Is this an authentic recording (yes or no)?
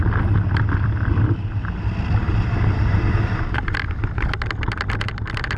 no